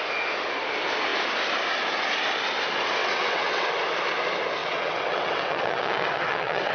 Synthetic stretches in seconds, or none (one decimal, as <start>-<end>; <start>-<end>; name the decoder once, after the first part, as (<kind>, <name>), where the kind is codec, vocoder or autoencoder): 3.0-3.7 (vocoder, WaveNeXt); 4.6-6.7